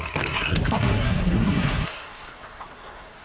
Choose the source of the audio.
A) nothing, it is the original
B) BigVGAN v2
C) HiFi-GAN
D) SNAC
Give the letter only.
D